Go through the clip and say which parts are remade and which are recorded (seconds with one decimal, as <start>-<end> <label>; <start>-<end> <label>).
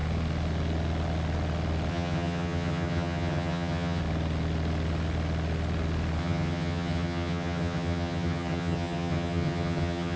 0.0-1.9 recorded; 1.9-4.0 remade; 4.0-6.2 recorded; 6.2-10.2 remade